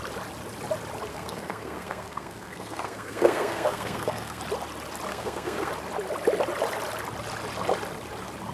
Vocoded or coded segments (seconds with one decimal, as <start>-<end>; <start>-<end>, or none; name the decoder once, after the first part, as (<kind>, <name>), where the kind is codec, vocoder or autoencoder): 1.1-4.4 (codec, SNAC); 5.1-5.7